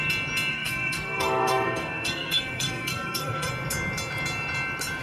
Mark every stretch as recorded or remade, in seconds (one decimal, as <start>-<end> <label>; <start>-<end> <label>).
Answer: 0.0-0.5 recorded; 0.5-3.5 remade; 3.5-5.0 recorded